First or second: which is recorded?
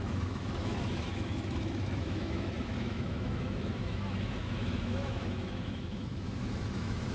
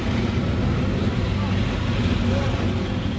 second